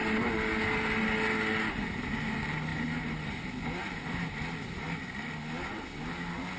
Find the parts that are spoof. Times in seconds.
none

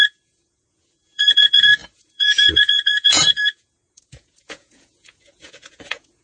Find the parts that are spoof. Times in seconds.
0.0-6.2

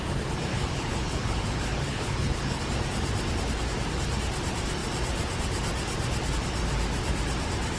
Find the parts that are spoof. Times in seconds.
0.5-2.6

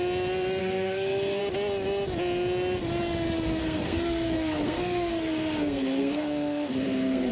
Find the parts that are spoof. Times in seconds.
0.6-1.4; 3.6-7.3

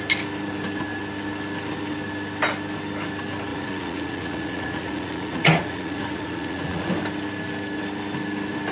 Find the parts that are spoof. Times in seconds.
3.5-6.9

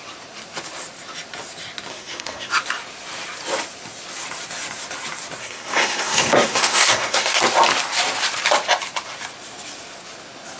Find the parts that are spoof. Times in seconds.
1.9-2.5; 5.4-7.4